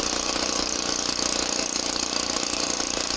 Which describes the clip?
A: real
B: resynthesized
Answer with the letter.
B